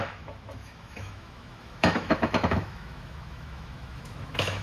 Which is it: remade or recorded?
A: remade